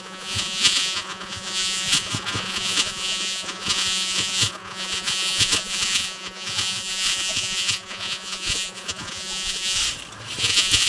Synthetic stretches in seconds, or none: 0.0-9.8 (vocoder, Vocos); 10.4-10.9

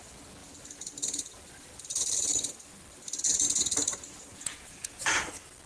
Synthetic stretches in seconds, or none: 4.3-5.3 (vocoder, Vocos)

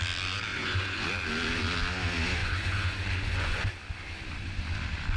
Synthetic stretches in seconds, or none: 0.5-1.1 (vocoder, Vocos); 2.4-3.7

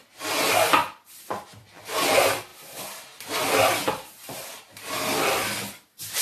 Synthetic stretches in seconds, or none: none